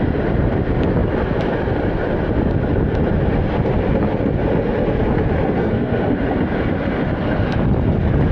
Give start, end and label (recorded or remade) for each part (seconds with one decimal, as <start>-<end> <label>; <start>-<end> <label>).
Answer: 0.0-5.6 recorded; 5.6-6.1 remade; 6.1-8.3 recorded